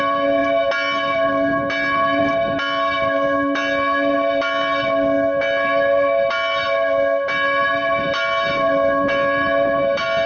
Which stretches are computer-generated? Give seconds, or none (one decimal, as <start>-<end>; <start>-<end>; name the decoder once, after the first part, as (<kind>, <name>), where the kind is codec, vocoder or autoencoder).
none